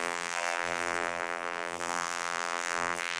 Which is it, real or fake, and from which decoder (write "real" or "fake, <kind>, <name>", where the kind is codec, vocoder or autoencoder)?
fake, vocoder, BigVGAN v2